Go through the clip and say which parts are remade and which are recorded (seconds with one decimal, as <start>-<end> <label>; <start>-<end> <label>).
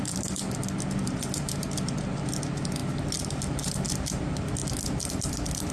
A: 0.0-2.8 recorded; 2.8-4.1 remade; 4.1-5.7 recorded